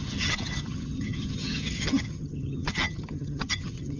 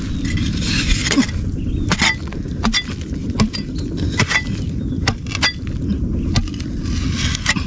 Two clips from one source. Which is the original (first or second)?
second